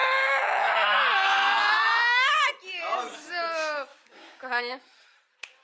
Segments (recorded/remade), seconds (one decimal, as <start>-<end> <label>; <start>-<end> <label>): 0.0-3.9 recorded; 3.9-4.6 remade; 4.6-5.6 recorded